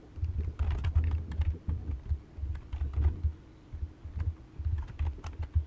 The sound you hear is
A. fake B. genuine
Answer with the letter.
B